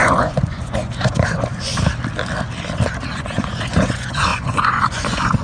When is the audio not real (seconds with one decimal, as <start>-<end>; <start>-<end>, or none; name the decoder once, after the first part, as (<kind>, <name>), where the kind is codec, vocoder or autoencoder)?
0.0-1.7 (vocoder, Vocos); 3.1-5.4